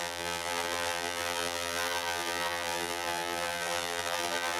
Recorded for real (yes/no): no